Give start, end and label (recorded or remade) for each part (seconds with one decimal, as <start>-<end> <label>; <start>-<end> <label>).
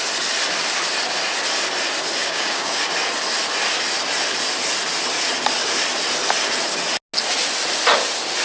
0.0-2.2 recorded; 2.2-2.8 remade; 2.8-8.4 recorded